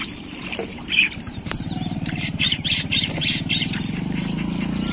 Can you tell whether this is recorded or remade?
remade